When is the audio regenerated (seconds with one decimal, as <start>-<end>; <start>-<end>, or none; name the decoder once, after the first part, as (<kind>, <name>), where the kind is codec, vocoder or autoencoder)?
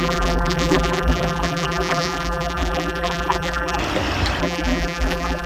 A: 0.0-3.8 (vocoder, BigVGAN v2); 4.4-5.5